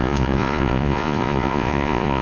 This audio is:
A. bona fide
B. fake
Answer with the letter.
B